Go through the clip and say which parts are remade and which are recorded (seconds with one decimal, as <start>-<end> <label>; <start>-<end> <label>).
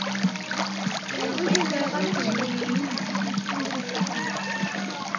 0.0-5.2 recorded